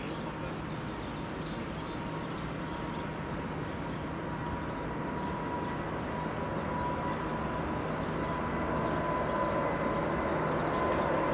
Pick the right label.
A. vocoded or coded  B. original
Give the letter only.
B